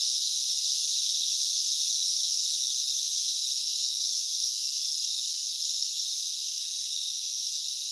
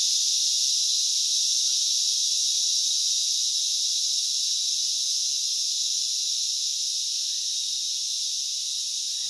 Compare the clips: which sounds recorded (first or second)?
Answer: second